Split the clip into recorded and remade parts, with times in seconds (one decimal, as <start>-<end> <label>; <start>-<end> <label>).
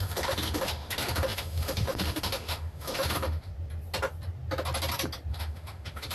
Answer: 0.0-3.5 remade; 3.5-5.3 recorded; 5.3-6.1 remade